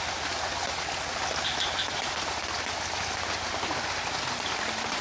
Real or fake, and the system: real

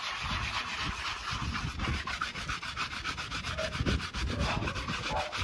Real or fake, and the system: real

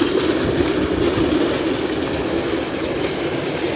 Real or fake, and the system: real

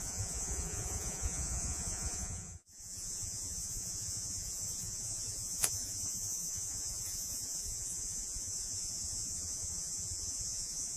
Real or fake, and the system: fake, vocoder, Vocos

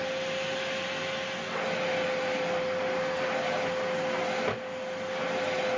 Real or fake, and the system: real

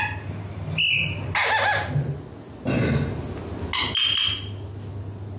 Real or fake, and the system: real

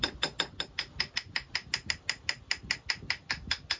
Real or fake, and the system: real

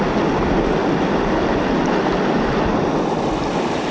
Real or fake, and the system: real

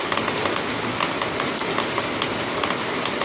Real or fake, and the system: real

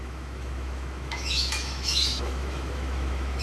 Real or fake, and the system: fake, autoencoder, DAC-VAE